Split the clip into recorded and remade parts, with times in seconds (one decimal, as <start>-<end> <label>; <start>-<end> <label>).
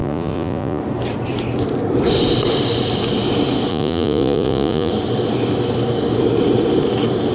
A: 0.0-0.8 remade; 0.8-3.7 recorded; 3.7-4.9 remade; 4.9-7.3 recorded